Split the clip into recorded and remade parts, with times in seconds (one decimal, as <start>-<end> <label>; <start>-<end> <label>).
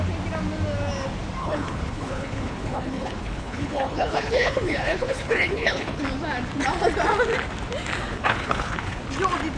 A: 0.0-1.4 recorded; 1.4-6.0 remade; 6.0-8.1 recorded; 8.1-9.0 remade; 9.0-9.6 recorded